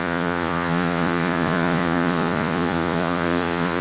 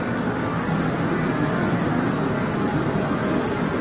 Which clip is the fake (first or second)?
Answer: first